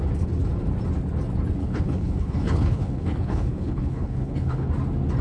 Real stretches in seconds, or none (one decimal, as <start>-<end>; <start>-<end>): 0.0-1.6; 4.7-5.2